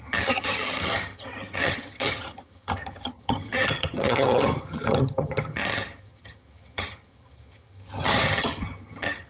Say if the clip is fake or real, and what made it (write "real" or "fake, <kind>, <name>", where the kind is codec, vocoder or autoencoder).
fake, vocoder, HiFi-GAN